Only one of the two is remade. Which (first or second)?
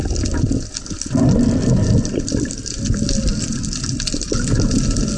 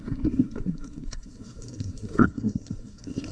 second